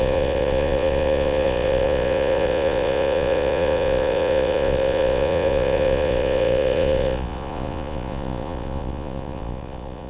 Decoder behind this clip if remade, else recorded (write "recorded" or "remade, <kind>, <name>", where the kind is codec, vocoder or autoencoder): remade, vocoder, Vocos